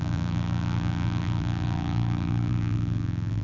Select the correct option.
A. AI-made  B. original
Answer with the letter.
A